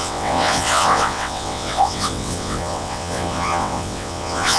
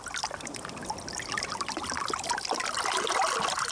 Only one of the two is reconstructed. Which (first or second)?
first